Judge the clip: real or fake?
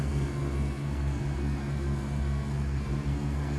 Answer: fake